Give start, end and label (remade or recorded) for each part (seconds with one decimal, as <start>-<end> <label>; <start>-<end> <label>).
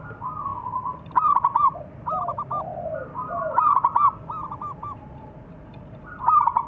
0.0-2.3 remade; 2.3-3.6 recorded; 3.6-6.7 remade